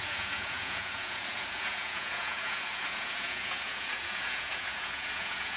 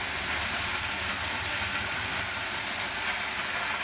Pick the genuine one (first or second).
second